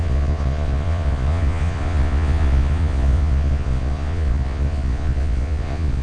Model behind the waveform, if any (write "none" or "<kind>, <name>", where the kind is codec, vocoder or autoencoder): vocoder, Vocos